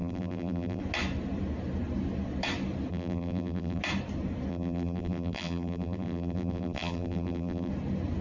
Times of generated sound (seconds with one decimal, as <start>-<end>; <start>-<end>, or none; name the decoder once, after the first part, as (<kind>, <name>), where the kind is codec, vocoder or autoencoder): 0.0-0.8 (vocoder, BigVGAN v2); 2.9-3.8; 4.5-7.7